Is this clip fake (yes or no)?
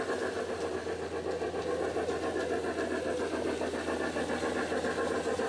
no